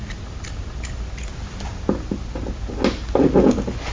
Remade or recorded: recorded